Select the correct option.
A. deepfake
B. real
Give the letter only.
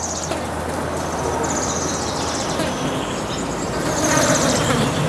B